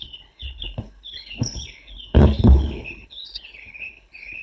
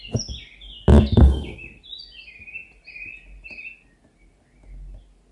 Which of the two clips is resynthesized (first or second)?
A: first